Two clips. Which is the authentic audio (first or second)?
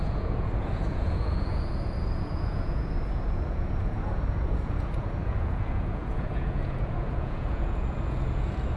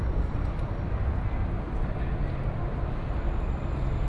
second